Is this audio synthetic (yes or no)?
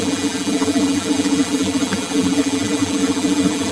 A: yes